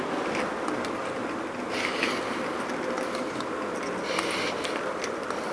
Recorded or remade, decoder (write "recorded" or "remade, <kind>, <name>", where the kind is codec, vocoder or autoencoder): recorded